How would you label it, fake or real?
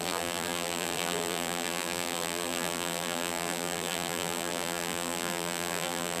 fake